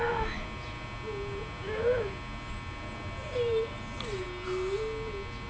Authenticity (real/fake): real